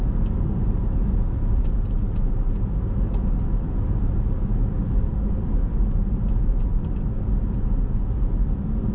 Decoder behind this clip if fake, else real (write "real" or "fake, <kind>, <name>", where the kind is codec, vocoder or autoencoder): real